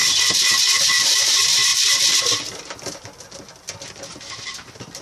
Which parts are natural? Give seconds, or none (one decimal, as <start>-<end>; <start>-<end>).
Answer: 0.0-5.0